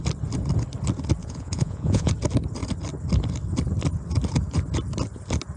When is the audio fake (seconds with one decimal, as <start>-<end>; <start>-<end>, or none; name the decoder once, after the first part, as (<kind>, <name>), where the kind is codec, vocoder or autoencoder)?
1.2-2.1 (vocoder, Vocos)